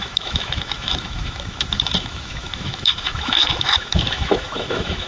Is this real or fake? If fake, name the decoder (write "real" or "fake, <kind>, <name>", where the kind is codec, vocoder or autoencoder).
fake, autoencoder, DAC-VAE